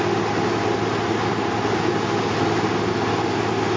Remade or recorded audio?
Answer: recorded